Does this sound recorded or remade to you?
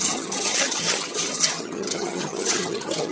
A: remade